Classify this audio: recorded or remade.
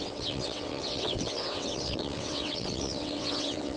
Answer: remade